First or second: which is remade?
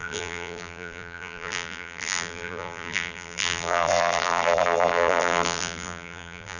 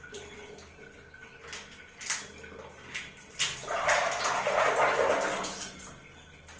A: first